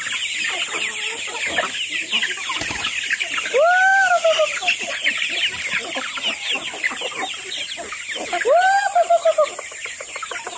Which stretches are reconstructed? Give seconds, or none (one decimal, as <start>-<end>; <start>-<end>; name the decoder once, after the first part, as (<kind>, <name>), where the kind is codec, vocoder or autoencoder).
none